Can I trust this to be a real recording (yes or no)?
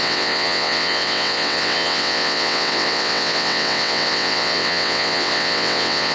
no